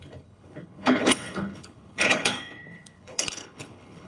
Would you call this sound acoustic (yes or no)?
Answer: no